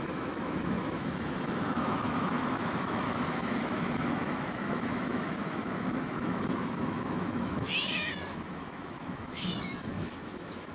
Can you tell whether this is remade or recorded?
remade